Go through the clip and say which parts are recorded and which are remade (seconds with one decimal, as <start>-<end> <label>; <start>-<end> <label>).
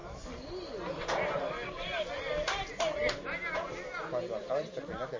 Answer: 0.0-5.2 recorded